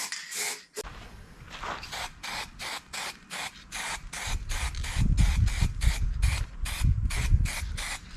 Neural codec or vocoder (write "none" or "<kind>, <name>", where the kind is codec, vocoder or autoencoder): none